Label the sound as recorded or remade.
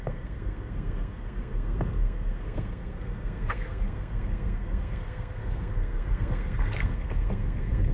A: remade